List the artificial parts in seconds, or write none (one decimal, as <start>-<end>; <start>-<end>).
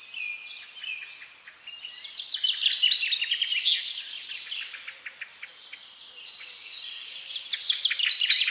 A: 5.5-6.1